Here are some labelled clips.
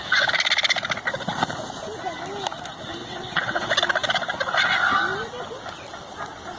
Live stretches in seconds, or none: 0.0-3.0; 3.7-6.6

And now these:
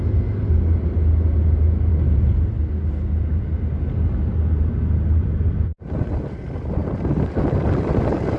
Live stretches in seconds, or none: 0.0-8.4

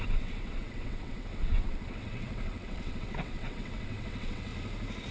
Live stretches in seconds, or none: 4.5-5.1

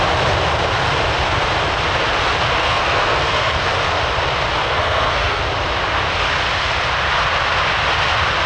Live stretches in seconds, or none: 0.0-2.6; 3.7-4.6; 5.4-8.5

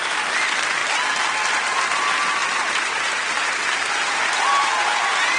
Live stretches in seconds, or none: 0.8-1.6

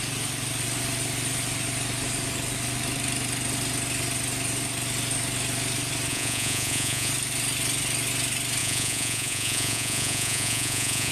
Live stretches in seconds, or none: 0.0-6.1; 7.1-8.6

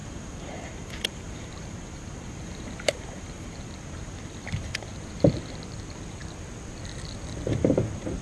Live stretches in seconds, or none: 4.9-8.2

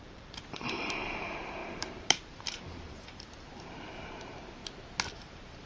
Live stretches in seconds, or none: 4.6-5.1